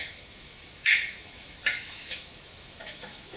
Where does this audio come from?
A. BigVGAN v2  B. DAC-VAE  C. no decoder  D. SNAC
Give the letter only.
B